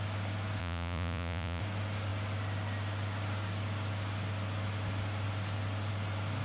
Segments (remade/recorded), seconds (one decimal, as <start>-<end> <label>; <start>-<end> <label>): 0.0-0.6 recorded; 0.6-1.6 remade; 1.6-6.4 recorded